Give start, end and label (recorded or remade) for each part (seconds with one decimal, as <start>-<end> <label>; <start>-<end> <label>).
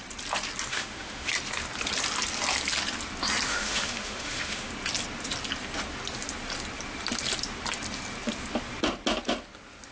0.0-0.7 recorded; 0.7-1.3 remade; 1.3-3.5 recorded; 3.5-4.7 remade; 4.7-9.9 recorded